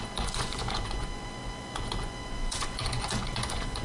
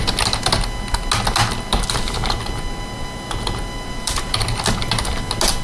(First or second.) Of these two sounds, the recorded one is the second